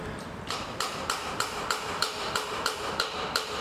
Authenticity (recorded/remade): remade